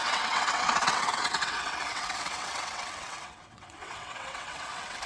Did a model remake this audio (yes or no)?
yes